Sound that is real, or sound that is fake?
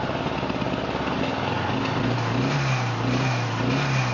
real